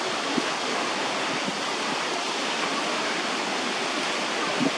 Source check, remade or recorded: recorded